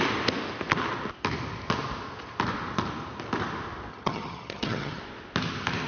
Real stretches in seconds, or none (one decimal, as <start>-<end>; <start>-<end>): 0.0-3.9; 5.0-5.9